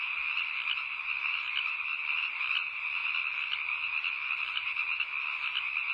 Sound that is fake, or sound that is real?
real